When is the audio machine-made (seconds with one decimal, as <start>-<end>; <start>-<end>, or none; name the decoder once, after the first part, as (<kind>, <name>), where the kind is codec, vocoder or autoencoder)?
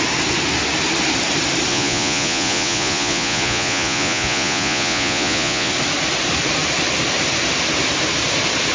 1.7-5.7 (vocoder, Vocos)